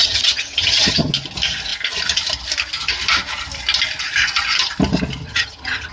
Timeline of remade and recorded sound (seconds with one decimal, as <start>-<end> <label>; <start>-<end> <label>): 0.0-1.1 remade; 1.1-5.2 recorded; 5.2-5.9 remade